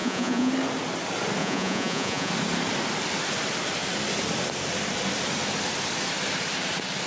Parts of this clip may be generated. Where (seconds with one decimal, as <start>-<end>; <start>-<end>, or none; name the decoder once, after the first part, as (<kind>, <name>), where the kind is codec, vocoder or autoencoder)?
0.0-0.5 (vocoder, Vocos); 1.4-2.3